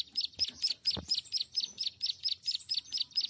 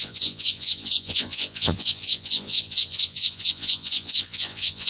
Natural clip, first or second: first